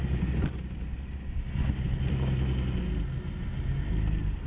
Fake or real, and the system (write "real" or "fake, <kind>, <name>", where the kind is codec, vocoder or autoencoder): real